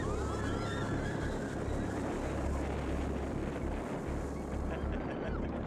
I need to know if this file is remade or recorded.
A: recorded